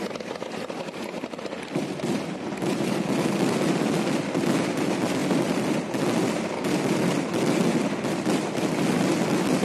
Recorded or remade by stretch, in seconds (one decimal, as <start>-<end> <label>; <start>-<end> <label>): 0.0-9.6 recorded